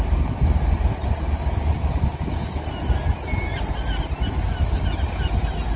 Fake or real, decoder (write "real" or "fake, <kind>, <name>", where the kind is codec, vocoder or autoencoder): real